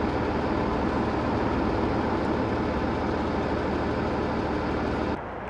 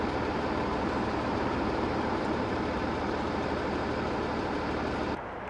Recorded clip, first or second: first